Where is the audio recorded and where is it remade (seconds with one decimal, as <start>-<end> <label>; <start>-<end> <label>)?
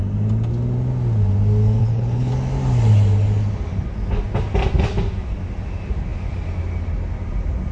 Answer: 0.0-1.8 recorded; 1.8-2.3 remade; 2.3-7.7 recorded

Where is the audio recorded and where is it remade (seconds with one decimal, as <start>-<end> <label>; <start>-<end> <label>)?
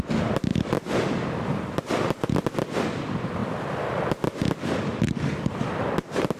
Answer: 0.0-6.4 recorded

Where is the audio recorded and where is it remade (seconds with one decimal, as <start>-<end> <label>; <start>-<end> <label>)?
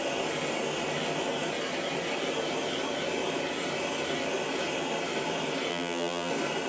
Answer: 0.0-5.7 recorded; 5.7-6.3 remade; 6.3-6.7 recorded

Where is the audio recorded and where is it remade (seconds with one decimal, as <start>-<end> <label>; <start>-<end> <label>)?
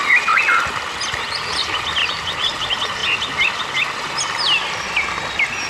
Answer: 0.0-2.0 recorded; 2.0-2.5 remade; 2.5-5.7 recorded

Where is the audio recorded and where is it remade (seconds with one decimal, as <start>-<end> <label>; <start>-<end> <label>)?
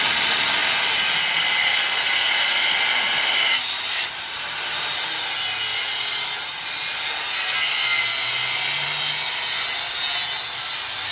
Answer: 0.0-3.1 recorded; 3.1-4.4 remade; 4.4-11.1 recorded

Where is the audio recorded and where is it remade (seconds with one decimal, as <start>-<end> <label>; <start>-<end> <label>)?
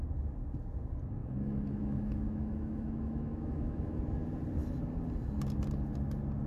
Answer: 0.0-1.2 recorded; 1.2-4.0 remade; 4.0-6.5 recorded